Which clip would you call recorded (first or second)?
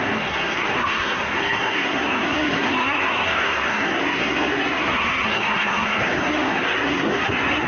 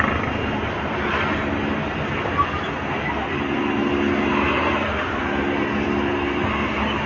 second